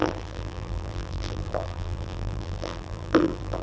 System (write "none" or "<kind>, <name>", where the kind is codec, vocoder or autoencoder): vocoder, BigVGAN v2